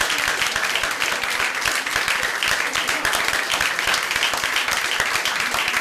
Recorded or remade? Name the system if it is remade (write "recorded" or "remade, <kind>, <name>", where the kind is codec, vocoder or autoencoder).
remade, vocoder, BigVGAN v2